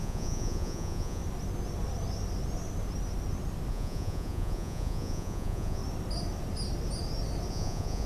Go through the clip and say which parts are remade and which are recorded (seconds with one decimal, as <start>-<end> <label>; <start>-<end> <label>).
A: 0.0-1.2 remade; 1.2-3.7 recorded; 3.7-5.8 remade; 5.8-7.5 recorded; 7.5-8.1 remade